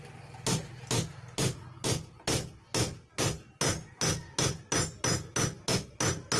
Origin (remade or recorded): recorded